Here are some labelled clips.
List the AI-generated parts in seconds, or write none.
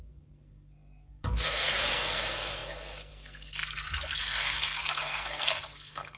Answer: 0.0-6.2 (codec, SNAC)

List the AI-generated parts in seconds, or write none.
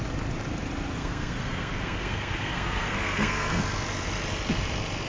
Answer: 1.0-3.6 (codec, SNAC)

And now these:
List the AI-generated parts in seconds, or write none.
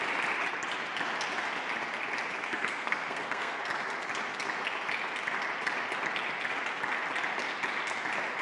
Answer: 2.4-3.6 (codec, SNAC)